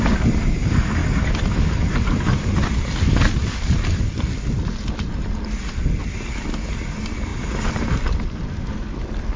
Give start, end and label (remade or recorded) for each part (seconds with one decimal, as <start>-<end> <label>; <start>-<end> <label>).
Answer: 0.0-9.4 recorded